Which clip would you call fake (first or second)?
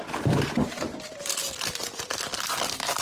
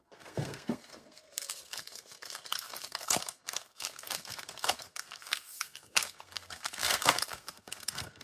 second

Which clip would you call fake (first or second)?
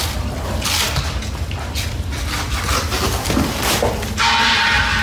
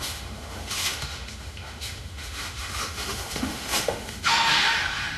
second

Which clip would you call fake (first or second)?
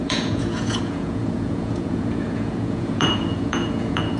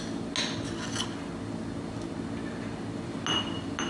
first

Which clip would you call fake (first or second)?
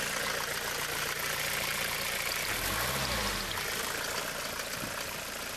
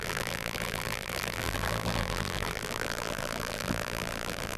second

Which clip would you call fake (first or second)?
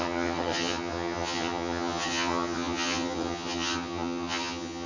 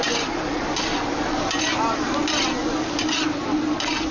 first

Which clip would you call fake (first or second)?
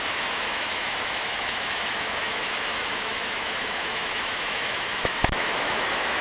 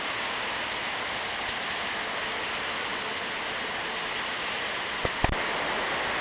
first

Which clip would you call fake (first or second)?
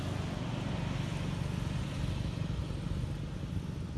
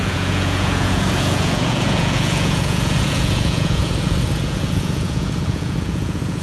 second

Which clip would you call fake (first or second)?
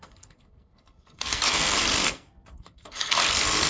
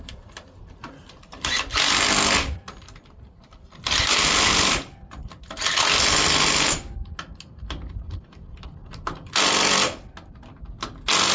first